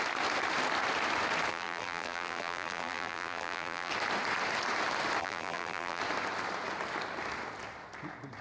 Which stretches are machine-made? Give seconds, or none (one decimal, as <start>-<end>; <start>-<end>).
1.5-3.9; 5.2-6.0